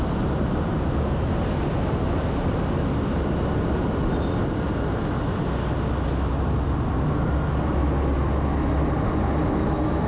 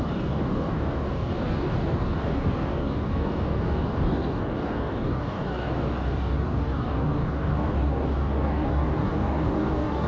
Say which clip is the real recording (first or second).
first